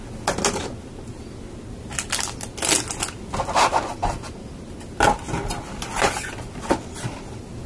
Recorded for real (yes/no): yes